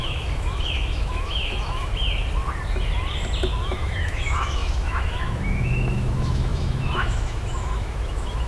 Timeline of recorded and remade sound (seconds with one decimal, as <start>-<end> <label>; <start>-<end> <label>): 0.0-1.9 remade; 1.9-3.6 recorded; 3.6-8.5 remade